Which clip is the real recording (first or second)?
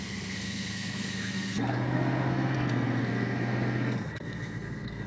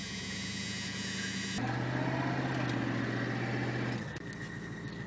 second